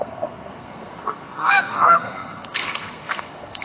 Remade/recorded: remade